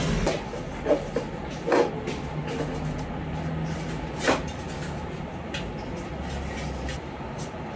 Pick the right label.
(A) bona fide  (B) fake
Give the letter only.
A